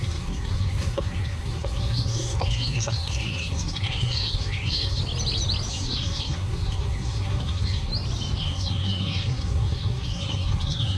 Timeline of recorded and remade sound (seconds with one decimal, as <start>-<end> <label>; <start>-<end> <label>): 0.0-5.0 remade; 5.0-5.7 recorded; 5.7-7.9 remade; 7.9-8.4 recorded; 8.4-11.0 remade